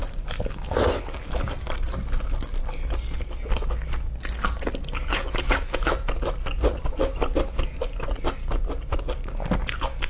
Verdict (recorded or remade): recorded